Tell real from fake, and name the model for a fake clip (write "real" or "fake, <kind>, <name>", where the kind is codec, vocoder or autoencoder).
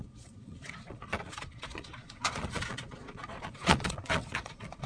fake, vocoder, Vocos